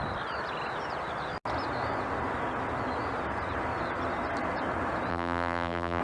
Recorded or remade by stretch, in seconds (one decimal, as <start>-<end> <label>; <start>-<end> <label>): 0.0-5.1 recorded; 5.1-6.0 remade